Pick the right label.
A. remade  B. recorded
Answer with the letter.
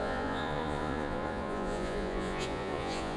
A